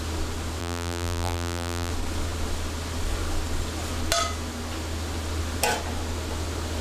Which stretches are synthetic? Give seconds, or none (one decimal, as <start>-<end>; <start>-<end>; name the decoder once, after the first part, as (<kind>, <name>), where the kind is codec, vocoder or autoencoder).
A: 0.6-1.9 (vocoder, BigVGAN v2)